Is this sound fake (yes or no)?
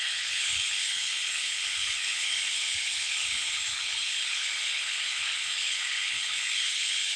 yes